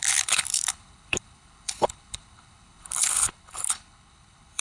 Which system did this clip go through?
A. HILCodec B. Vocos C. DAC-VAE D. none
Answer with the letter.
A